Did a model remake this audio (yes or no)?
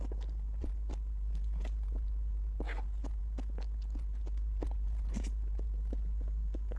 no